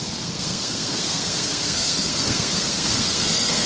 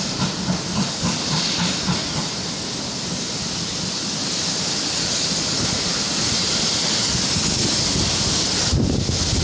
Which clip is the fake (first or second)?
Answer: first